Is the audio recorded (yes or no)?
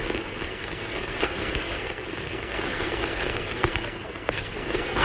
no